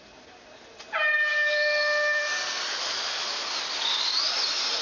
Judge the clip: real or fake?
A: real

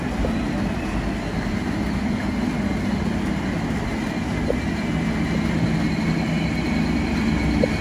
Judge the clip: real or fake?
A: real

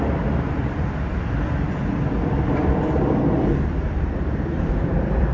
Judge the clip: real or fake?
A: fake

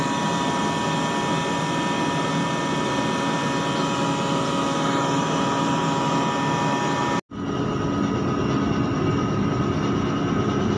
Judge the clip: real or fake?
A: real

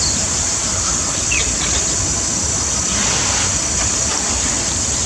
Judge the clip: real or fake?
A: real